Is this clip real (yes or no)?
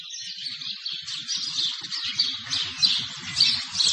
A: yes